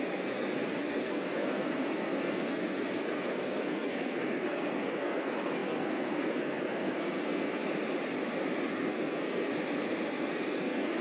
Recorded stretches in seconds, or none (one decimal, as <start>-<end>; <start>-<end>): 7.6-8.7; 9.5-10.1